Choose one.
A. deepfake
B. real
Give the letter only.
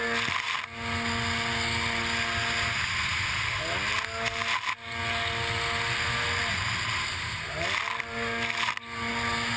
B